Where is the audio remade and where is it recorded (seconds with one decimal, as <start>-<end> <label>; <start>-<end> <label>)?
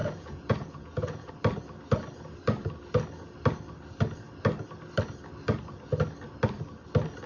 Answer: 0.0-1.3 remade; 1.3-7.3 recorded